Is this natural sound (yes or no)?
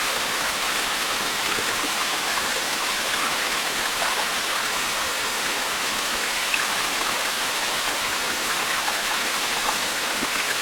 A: no